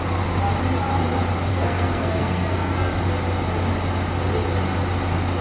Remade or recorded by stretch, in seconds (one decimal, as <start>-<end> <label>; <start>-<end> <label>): 0.0-1.5 recorded; 1.5-2.9 remade; 2.9-5.4 recorded